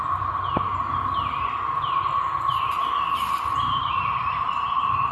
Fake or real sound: real